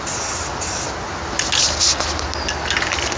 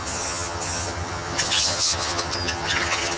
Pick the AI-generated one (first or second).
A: second